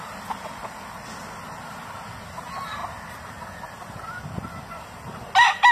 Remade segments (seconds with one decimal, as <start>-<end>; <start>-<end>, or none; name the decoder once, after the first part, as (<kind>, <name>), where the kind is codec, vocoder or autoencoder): none